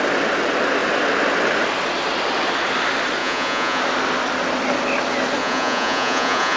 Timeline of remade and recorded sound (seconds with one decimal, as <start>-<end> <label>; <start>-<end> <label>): 0.0-3.2 recorded; 3.2-3.8 remade; 3.8-5.4 recorded; 5.4-6.6 remade